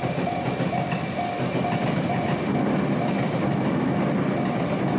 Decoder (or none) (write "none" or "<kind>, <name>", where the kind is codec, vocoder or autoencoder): none